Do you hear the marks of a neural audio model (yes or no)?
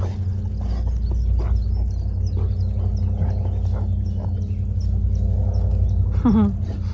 no